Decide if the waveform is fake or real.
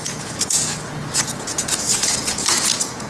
fake